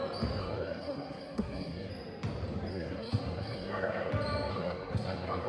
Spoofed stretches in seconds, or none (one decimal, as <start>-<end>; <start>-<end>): 0.4-1.9; 2.7-4.1; 4.5-5.5